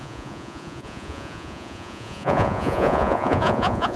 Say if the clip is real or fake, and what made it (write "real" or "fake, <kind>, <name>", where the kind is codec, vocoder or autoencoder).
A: fake, vocoder, Vocos